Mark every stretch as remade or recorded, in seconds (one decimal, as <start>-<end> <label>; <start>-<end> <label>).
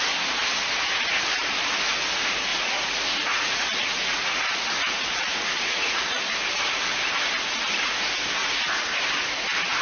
0.0-2.5 recorded; 2.5-6.2 remade; 6.2-8.4 recorded; 8.4-9.0 remade; 9.0-9.8 recorded